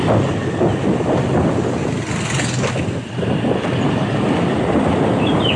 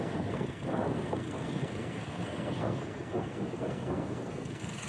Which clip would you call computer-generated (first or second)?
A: second